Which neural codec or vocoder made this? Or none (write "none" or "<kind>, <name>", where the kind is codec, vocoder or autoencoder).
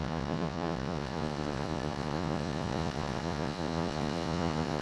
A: vocoder, Vocos